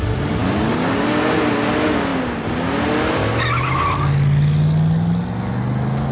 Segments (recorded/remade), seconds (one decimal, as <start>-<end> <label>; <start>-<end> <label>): 0.0-6.1 recorded